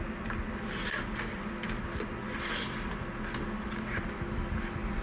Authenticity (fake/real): real